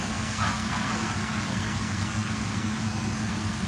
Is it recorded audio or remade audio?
remade